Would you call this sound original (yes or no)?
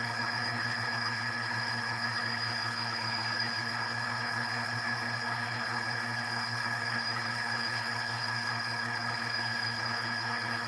no